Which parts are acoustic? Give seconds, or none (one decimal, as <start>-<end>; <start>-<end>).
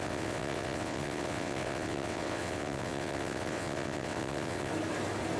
4.7-5.4